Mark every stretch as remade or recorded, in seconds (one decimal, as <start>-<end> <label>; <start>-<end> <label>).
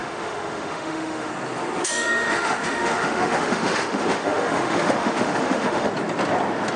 0.0-1.3 remade; 1.3-1.8 recorded; 1.8-5.9 remade; 5.9-6.8 recorded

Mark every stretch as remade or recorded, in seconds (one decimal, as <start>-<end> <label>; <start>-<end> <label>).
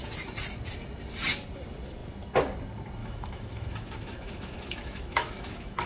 0.0-3.0 recorded; 3.0-5.9 remade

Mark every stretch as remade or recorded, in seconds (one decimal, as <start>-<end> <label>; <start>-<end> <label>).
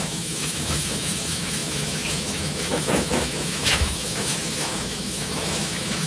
0.0-6.1 remade